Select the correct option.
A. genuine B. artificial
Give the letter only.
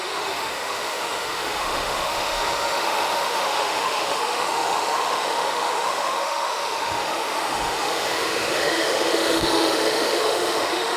B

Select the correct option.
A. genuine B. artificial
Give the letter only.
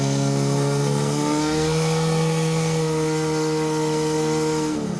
B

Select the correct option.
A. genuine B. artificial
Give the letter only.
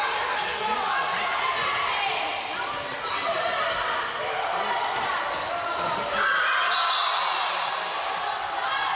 A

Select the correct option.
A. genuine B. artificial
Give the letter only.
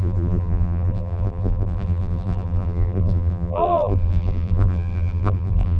B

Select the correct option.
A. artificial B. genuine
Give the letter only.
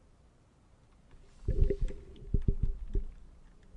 B